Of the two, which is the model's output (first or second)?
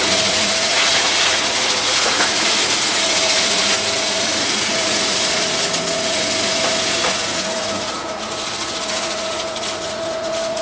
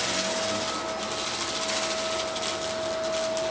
first